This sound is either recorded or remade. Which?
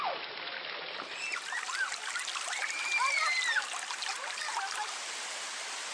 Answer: recorded